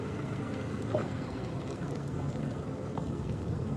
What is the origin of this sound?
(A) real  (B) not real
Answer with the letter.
B